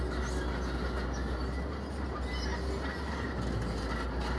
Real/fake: real